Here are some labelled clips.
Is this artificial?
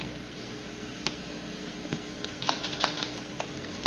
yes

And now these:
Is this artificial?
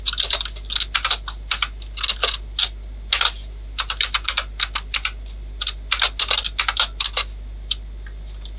no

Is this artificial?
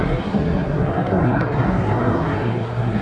yes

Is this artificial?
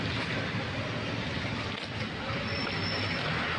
no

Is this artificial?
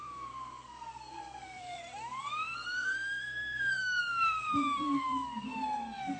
yes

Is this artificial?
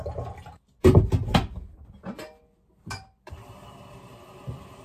no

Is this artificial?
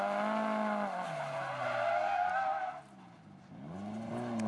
no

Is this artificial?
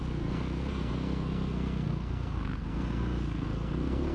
yes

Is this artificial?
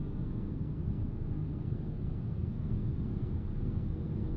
yes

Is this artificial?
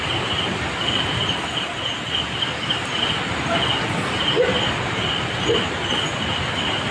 no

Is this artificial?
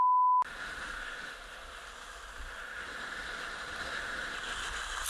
no